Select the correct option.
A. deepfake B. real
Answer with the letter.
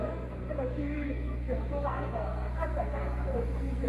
A